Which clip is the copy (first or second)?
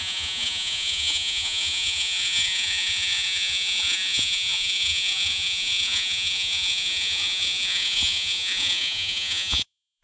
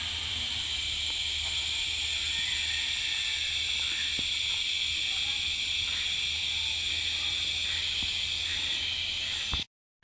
first